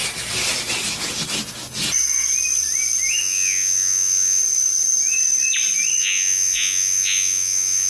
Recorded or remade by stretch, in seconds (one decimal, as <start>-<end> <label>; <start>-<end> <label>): 0.0-3.2 recorded; 3.2-4.4 remade; 4.4-6.0 recorded; 6.0-7.9 remade